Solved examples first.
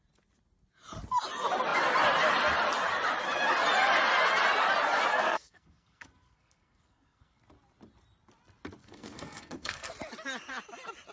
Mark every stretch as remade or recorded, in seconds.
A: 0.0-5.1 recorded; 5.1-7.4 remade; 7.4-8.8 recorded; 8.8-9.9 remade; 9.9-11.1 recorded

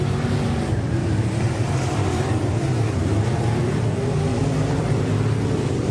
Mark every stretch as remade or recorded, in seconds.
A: 0.0-1.0 recorded; 1.0-3.3 remade; 3.3-4.3 recorded; 4.3-5.1 remade; 5.1-5.9 recorded

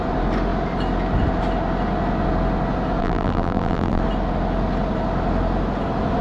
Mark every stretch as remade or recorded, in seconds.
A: 0.0-3.0 recorded; 3.0-4.0 remade; 4.0-6.2 recorded

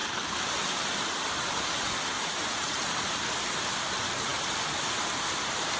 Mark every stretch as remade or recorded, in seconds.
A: 0.0-5.8 recorded

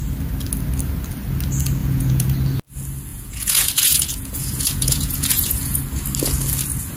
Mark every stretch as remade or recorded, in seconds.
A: 0.0-1.8 recorded; 1.8-2.3 remade; 2.3-3.1 recorded; 3.1-5.8 remade; 5.8-7.0 recorded